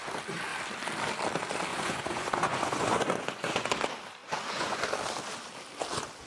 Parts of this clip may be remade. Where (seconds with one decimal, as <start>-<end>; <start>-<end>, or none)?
1.7-3.7; 4.2-4.8